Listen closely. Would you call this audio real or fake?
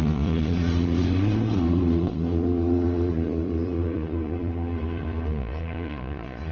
fake